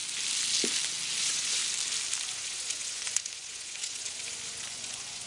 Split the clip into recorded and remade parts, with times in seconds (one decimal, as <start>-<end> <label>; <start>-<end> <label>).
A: 0.0-1.2 recorded; 1.2-1.6 remade; 1.6-2.3 recorded; 2.3-5.3 remade